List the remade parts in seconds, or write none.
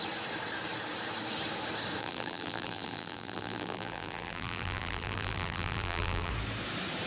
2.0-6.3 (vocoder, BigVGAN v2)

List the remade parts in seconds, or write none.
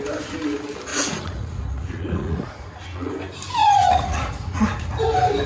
0.9-3.1 (vocoder, Vocos); 3.6-5.0